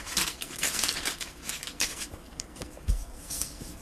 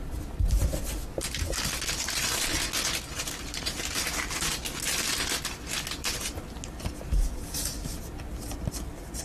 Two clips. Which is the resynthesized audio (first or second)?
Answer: first